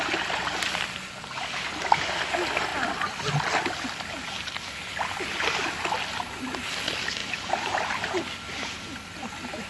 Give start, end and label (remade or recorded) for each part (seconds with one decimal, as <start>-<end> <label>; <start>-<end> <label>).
0.0-7.2 recorded; 7.2-7.8 remade; 7.8-9.7 recorded